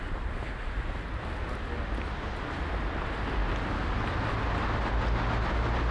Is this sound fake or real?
real